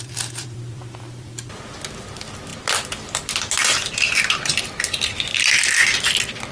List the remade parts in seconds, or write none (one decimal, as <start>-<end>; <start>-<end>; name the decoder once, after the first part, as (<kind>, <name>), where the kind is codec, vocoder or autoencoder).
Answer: 0.0-2.5 (vocoder, BigVGAN v2)